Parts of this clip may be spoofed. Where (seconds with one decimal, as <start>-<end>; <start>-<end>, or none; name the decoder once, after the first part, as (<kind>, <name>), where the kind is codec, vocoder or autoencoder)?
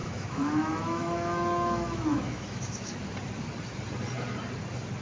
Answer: 0.0-3.0 (autoencoder, DAC-VAE)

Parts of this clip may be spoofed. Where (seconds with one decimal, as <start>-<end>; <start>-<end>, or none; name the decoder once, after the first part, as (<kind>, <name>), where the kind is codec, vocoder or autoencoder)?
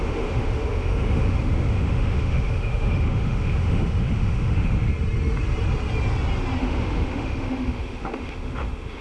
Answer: 0.0-4.9 (autoencoder, DAC-VAE); 6.6-9.0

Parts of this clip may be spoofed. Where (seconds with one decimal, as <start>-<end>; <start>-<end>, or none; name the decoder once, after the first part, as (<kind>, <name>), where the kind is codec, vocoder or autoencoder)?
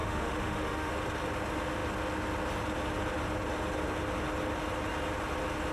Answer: 0.0-0.9 (autoencoder, DAC-VAE)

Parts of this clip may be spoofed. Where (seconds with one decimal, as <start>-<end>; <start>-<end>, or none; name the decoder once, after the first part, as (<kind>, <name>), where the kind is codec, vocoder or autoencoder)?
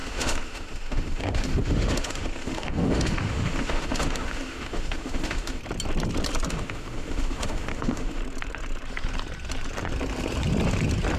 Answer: 0.0-5.6 (autoencoder, DAC-VAE); 6.5-8.2